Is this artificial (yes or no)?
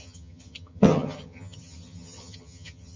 yes